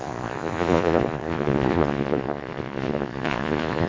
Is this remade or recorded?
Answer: remade